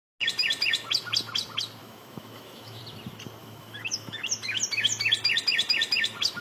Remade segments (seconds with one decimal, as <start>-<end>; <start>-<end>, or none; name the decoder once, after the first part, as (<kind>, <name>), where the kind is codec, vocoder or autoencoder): 1.8-2.8 (autoencoder, DAC-VAE); 3.4-4.2